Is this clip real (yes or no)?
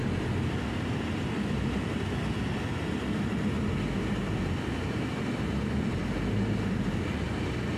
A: yes